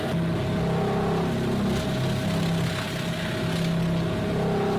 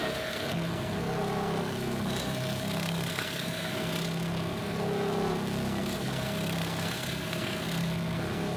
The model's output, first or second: second